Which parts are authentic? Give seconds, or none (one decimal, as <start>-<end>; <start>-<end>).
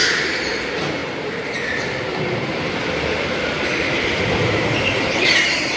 1.0-4.5